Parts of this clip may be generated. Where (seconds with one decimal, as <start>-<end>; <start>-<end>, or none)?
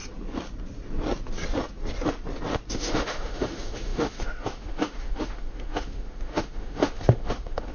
2.7-7.7